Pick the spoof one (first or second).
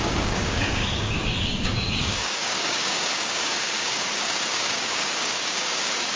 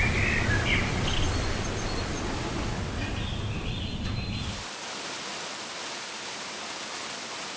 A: first